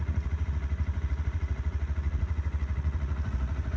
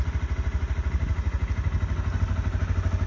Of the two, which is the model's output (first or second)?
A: first